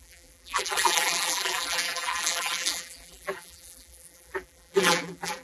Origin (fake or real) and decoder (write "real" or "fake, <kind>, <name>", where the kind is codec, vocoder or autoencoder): fake, vocoder, BigVGAN v2